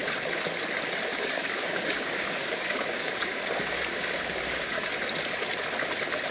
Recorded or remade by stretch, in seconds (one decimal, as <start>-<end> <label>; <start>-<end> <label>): 0.0-1.1 recorded; 1.1-4.9 remade; 4.9-6.3 recorded